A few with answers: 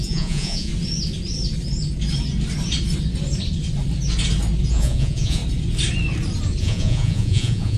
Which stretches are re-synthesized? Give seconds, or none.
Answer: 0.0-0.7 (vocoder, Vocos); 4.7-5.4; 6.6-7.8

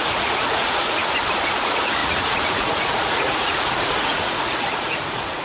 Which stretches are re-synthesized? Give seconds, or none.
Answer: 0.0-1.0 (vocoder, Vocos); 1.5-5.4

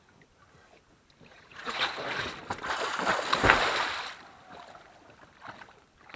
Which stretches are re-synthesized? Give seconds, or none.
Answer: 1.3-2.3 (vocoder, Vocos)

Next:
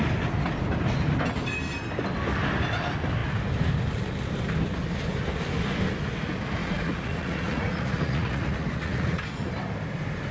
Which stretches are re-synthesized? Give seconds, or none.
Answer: 6.6-9.5 (vocoder, Vocos)

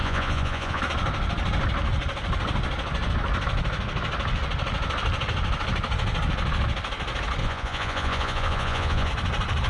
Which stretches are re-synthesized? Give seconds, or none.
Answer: 0.0-0.8 (vocoder, Vocos); 7.4-9.1